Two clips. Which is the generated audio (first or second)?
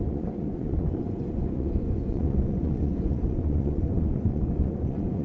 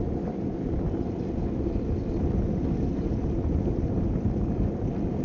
first